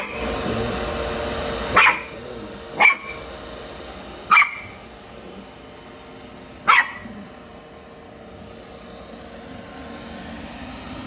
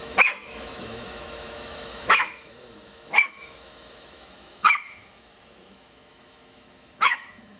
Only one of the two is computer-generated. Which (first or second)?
second